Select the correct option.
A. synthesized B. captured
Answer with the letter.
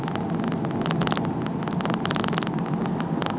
B